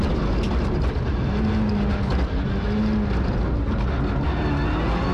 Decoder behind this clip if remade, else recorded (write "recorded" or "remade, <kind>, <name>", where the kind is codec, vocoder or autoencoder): recorded